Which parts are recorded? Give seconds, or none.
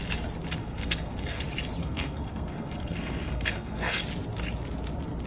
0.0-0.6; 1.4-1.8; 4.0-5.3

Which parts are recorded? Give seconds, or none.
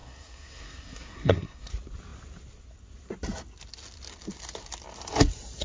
1.7-5.6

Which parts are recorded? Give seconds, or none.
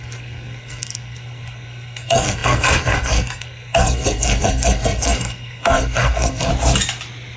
6.5-7.4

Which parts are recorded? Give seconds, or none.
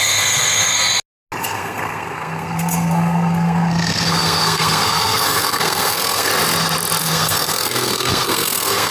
0.7-1.4; 6.3-7.0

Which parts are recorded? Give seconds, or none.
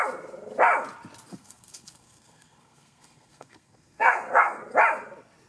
0.0-1.3; 4.6-5.5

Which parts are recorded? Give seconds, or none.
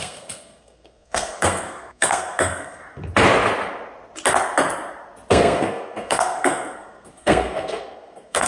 2.8-5.3